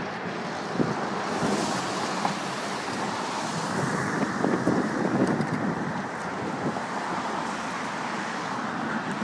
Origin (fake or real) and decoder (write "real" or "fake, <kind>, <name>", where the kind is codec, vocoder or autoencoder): fake, vocoder, BigVGAN v2